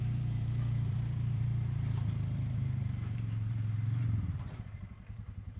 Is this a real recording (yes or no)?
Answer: no